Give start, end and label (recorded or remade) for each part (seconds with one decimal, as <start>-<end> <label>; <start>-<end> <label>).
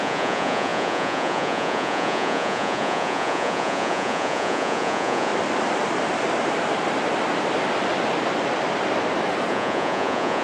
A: 0.0-5.3 remade; 5.3-9.5 recorded; 9.5-10.4 remade